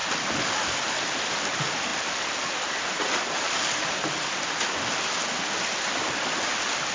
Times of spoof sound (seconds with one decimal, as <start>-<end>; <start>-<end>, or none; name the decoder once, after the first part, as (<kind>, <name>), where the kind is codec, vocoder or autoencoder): none